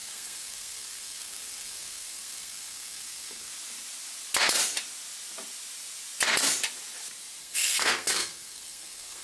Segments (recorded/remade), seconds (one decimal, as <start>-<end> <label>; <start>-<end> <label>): 0.0-3.5 remade; 3.5-7.4 recorded; 7.4-9.2 remade